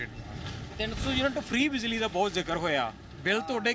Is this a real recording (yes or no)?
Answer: yes